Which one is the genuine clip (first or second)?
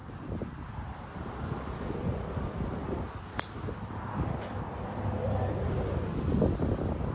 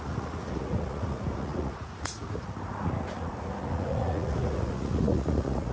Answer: first